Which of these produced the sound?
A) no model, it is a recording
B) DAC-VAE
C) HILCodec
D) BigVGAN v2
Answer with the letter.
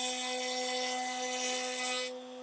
A